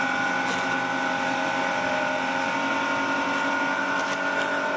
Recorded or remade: recorded